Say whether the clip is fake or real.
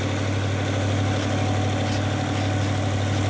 real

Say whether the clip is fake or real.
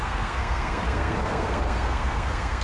fake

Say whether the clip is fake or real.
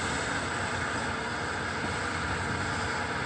real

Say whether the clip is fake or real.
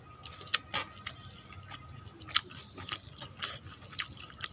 real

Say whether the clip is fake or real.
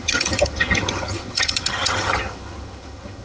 fake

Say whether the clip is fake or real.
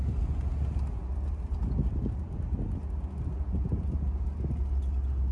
real